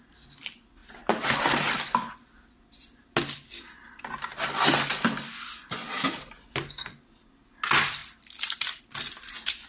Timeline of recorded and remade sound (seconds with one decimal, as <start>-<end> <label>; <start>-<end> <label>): 0.0-9.7 recorded